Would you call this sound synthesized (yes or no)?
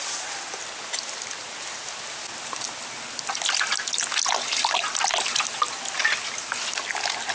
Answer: no